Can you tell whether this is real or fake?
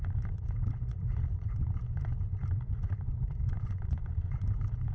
fake